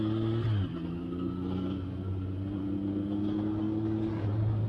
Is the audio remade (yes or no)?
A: no